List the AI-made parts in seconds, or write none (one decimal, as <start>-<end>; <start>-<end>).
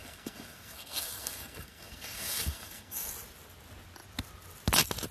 0.0-3.1